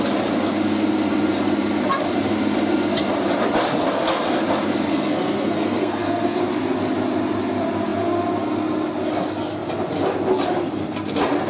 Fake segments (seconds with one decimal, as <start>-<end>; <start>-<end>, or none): 4.9-6.4